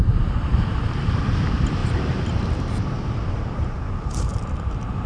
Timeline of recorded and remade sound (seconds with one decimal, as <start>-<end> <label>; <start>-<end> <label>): 0.0-5.1 remade